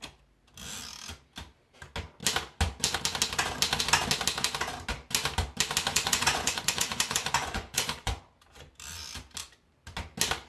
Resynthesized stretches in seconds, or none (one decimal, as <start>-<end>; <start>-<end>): 5.9-8.2